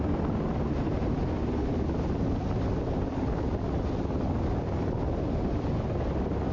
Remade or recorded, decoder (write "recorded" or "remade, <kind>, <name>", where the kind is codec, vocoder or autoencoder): recorded